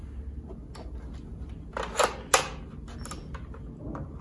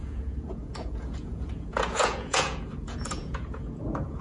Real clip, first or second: first